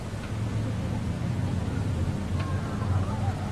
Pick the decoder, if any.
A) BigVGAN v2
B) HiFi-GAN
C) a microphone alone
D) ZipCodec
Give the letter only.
C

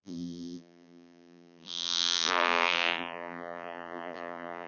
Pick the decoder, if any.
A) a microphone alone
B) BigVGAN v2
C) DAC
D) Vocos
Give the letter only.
B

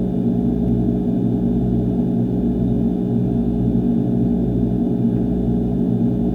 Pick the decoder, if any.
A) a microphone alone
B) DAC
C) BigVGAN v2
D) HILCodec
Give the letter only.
A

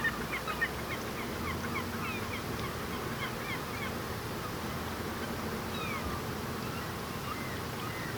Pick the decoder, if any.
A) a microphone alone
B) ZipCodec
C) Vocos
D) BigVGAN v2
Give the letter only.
A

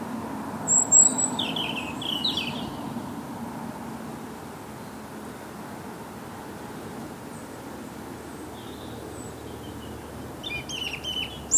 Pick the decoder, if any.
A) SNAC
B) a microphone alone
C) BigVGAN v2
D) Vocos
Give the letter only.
B